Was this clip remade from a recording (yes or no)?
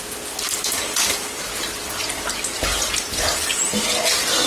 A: no